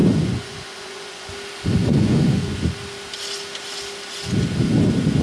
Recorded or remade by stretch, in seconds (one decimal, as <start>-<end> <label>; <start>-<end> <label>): 0.0-1.3 remade; 1.3-1.8 recorded; 1.8-2.7 remade; 2.7-5.2 recorded